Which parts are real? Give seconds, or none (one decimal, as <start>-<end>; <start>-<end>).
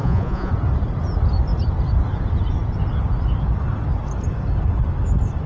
0.5-5.5